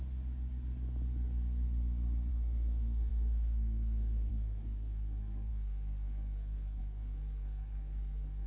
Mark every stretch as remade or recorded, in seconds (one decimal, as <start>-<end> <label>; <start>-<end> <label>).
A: 0.0-2.3 recorded; 2.3-8.5 remade